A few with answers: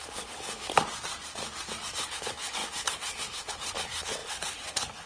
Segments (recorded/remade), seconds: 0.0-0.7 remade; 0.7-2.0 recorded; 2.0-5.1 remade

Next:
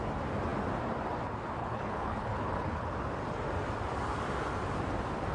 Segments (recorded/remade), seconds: 0.0-1.6 recorded; 1.6-2.9 remade; 2.9-5.3 recorded